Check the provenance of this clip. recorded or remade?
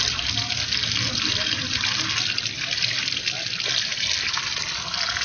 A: recorded